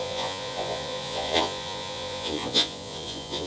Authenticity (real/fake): fake